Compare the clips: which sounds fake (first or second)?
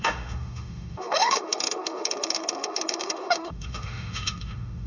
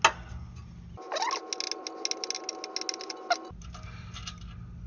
first